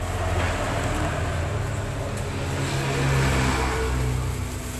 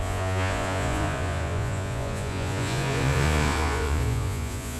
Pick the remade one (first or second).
second